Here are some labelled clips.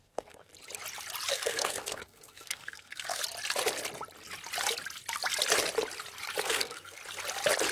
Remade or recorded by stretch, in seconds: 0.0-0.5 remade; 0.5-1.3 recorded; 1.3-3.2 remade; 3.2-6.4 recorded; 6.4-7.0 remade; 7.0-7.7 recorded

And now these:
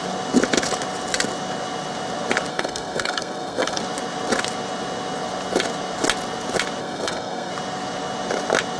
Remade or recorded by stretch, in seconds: 0.0-2.5 recorded; 2.5-3.8 remade; 3.8-6.8 recorded; 6.8-7.5 remade; 7.5-8.8 recorded

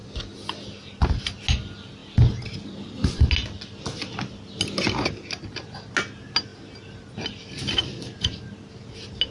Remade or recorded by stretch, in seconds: 0.0-9.3 recorded

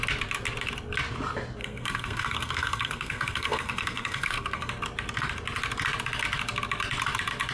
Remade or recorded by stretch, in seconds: 0.0-1.6 recorded; 1.6-4.7 remade; 4.7-7.5 recorded

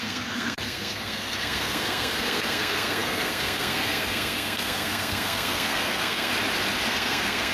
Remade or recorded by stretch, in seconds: 0.0-6.3 remade; 6.3-6.9 recorded; 6.9-7.5 remade

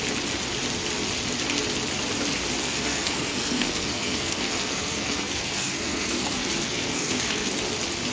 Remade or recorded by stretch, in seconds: 0.0-2.6 recorded; 2.6-7.5 remade; 7.5-8.1 recorded

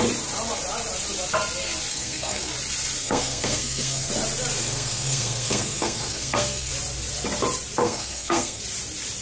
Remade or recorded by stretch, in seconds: 0.0-1.9 recorded; 1.9-2.5 remade; 2.5-3.0 recorded; 3.0-4.1 remade; 4.1-4.6 recorded; 4.6-6.7 remade; 6.7-7.8 recorded; 7.8-8.6 remade; 8.6-9.2 recorded

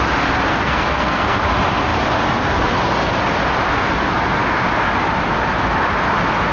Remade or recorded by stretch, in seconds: 0.0-0.5 recorded; 0.5-1.4 remade; 1.4-6.5 recorded